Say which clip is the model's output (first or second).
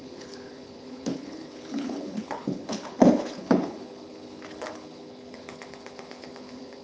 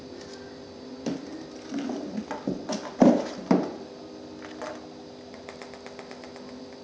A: first